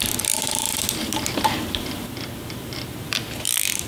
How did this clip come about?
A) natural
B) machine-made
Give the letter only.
B